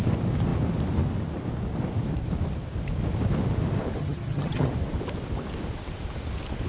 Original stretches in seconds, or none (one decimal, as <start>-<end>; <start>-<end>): 0.0-4.0; 4.7-6.7